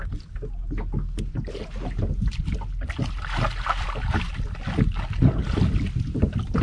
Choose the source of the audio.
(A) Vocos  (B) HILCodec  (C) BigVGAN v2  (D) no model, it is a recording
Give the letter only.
D